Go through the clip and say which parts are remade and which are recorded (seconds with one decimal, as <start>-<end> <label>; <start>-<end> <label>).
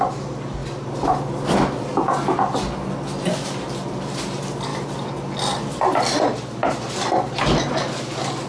0.0-8.5 recorded